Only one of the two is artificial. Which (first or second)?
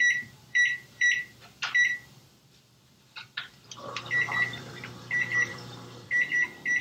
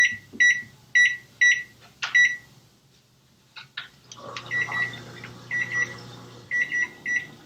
first